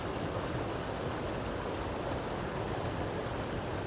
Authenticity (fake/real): real